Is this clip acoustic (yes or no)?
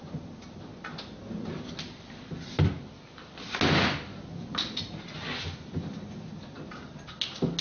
yes